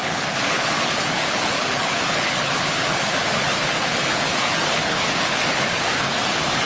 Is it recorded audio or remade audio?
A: remade